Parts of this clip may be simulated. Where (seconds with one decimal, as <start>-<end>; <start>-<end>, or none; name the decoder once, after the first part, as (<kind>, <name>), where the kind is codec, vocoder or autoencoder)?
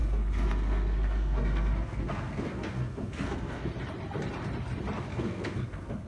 0.0-3.7 (codec, SNAC); 5.1-6.1